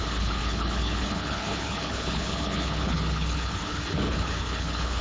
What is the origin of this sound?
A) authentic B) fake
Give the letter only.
B